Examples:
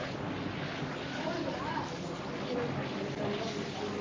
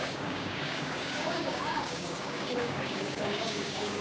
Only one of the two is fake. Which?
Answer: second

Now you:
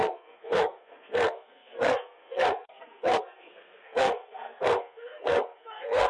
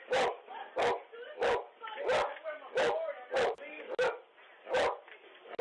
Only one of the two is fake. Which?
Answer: first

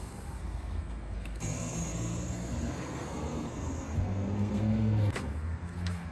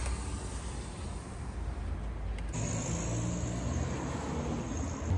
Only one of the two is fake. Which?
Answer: first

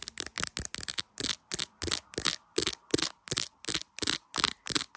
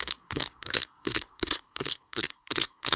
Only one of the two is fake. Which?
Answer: second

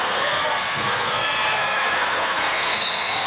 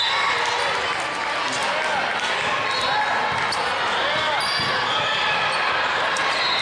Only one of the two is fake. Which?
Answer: first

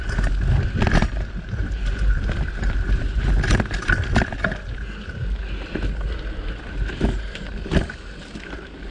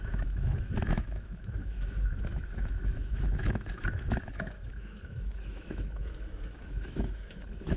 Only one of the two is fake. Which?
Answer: second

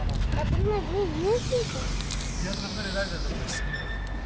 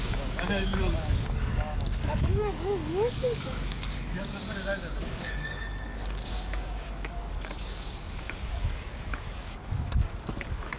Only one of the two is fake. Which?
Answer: second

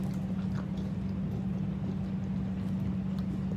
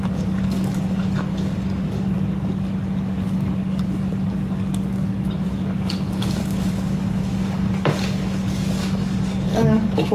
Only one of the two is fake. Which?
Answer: second